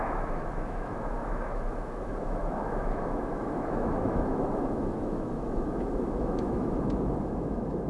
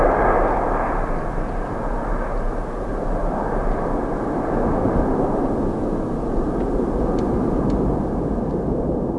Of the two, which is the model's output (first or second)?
first